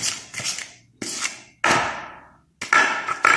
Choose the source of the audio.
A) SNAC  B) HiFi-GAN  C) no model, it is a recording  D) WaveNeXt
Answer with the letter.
C